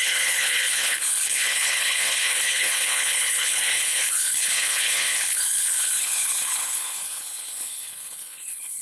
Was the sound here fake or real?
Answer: fake